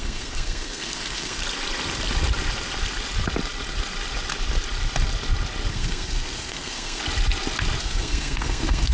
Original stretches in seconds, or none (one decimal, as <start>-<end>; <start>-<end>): 1.4-5.7; 7.0-7.8